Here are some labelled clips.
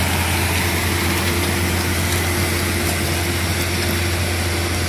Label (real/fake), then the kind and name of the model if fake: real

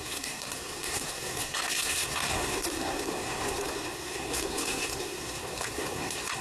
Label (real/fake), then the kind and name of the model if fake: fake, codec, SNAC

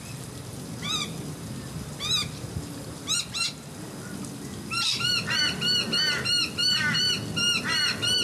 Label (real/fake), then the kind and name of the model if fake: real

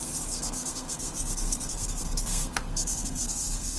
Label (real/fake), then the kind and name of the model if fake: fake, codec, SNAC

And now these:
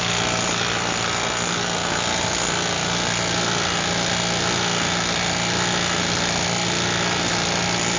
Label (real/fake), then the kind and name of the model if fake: real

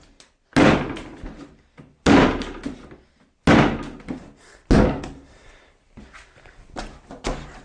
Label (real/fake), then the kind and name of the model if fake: real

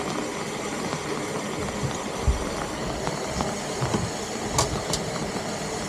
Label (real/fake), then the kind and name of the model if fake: real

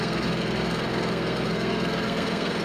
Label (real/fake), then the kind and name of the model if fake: fake, codec, SNAC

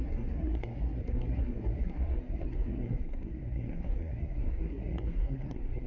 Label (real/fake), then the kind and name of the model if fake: fake, codec, SNAC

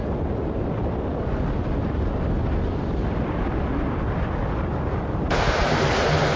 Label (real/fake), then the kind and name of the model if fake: real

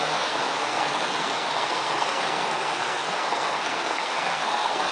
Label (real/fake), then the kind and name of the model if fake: fake, codec, SNAC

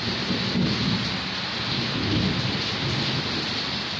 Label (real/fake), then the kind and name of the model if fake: real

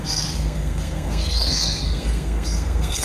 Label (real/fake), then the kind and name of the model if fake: fake, codec, SNAC